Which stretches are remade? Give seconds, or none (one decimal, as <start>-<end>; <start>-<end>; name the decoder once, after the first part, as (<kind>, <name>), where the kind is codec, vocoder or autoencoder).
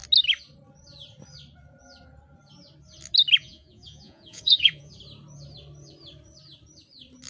3.4-4.9 (vocoder, Vocos)